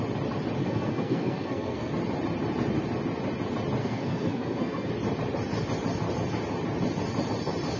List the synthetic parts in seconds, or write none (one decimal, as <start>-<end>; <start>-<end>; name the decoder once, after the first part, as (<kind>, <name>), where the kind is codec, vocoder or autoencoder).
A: 0.6-1.9 (codec, SNAC); 3.8-4.9

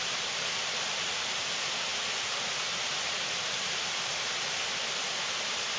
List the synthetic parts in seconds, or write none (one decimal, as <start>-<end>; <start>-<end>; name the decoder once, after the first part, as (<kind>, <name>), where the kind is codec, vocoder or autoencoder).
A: none

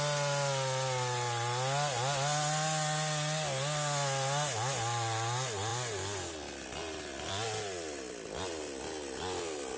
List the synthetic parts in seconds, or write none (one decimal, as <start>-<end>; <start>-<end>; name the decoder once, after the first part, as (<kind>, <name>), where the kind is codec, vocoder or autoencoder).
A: none